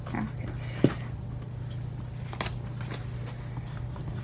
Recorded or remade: recorded